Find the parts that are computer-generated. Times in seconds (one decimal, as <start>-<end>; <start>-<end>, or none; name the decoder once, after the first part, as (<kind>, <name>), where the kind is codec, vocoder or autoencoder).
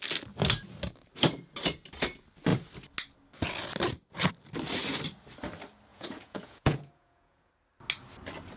5.9-7.5 (vocoder, Vocos)